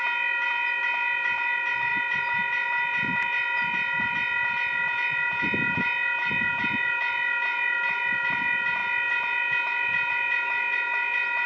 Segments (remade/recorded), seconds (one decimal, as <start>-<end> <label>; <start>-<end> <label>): 0.0-11.5 recorded